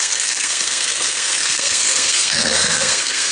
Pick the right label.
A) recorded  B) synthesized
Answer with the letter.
B